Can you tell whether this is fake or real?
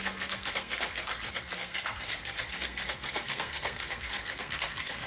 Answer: fake